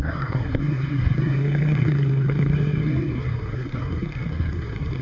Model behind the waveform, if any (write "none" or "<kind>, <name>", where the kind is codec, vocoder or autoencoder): codec, SNAC